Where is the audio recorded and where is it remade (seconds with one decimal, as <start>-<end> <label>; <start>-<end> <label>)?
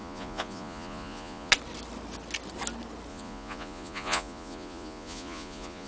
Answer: 0.0-1.5 remade; 1.5-3.1 recorded; 3.1-5.9 remade